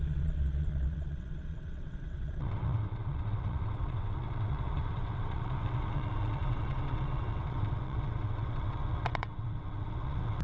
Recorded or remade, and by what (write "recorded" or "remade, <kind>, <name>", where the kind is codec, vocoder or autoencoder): remade, vocoder, WaveNeXt